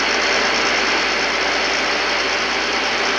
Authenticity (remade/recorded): recorded